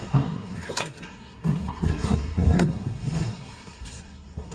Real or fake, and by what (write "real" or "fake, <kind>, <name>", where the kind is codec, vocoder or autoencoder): fake, codec, SNAC